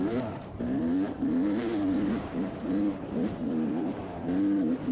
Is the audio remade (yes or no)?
yes